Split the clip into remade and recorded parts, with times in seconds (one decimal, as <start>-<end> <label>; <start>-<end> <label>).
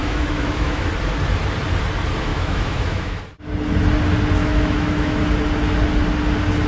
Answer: 0.0-0.9 remade; 0.9-2.3 recorded; 2.3-3.2 remade; 3.2-4.4 recorded; 4.4-5.2 remade; 5.2-6.7 recorded